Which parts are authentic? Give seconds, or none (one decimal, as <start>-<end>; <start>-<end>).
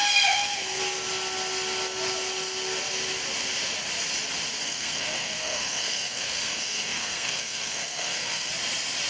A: 0.8-4.6; 8.5-9.1